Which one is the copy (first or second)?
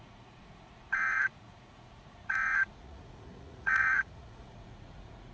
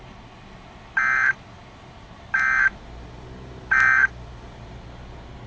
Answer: first